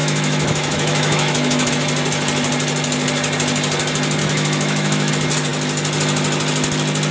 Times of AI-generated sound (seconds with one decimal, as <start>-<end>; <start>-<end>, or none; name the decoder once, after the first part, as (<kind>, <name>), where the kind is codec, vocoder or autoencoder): 0.0-1.7 (autoencoder, DAC-VAE); 4.2-5.1